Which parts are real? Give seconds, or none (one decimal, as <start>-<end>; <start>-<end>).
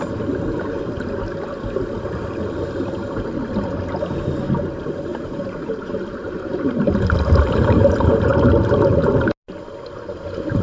0.0-5.1; 7.8-10.6